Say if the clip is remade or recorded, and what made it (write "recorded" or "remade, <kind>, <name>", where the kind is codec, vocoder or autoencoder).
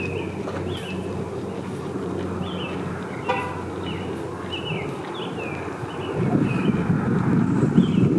recorded